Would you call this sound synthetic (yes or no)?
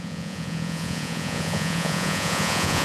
yes